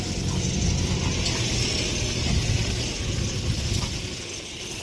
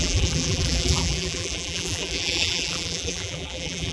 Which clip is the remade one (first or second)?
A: second